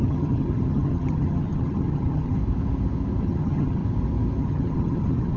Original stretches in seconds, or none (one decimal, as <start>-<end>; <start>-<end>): 2.4-3.2; 3.8-4.4